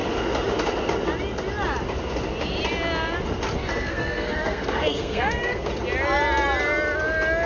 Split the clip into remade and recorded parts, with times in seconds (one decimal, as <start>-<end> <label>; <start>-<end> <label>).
0.0-3.6 recorded; 3.6-5.7 remade; 5.7-7.5 recorded